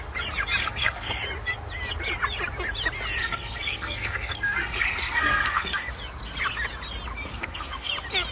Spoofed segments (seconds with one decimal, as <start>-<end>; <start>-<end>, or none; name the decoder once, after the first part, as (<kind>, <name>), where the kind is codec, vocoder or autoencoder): 0.6-1.2 (codec, SNAC); 3.2-5.9; 7.3-7.9